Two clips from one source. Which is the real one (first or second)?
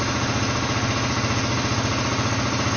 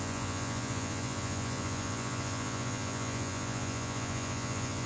first